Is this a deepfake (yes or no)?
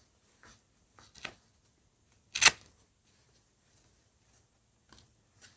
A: no